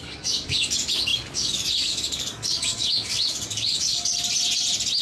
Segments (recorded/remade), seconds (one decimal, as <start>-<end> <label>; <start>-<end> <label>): 0.0-4.1 remade; 4.1-5.0 recorded